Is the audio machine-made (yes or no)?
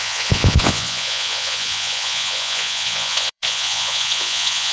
yes